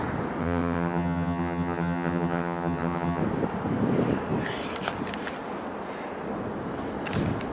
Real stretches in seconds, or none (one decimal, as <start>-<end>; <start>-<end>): 0.0-0.4; 3.2-7.5